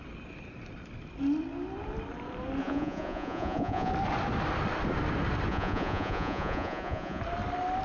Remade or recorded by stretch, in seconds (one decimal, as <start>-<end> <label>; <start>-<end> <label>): 0.0-2.6 recorded; 2.6-3.9 remade; 3.9-5.5 recorded; 5.5-7.2 remade; 7.2-7.8 recorded